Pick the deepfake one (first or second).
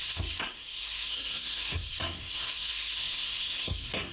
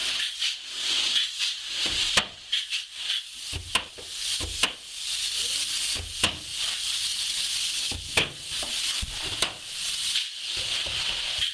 first